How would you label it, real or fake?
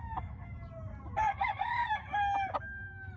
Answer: real